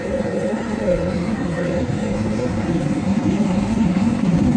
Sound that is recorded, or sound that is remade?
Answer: remade